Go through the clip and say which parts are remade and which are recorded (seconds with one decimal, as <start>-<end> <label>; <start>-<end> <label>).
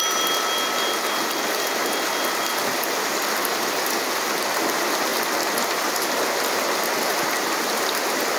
0.0-8.4 recorded